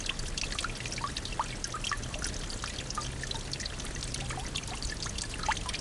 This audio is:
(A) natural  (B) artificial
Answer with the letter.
A